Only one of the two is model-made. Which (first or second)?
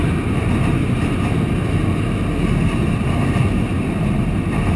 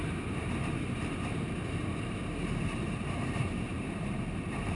second